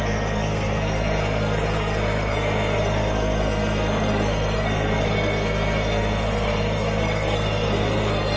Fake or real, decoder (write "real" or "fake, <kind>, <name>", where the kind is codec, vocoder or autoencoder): fake, codec, SNAC